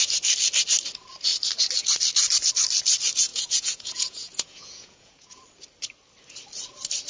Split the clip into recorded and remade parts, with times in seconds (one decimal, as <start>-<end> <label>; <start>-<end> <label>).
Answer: 0.0-3.3 recorded; 3.3-5.4 remade; 5.4-7.1 recorded